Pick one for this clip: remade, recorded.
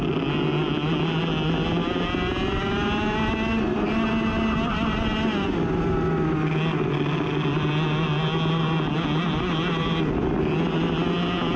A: recorded